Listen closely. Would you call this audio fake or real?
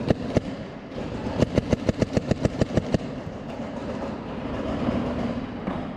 fake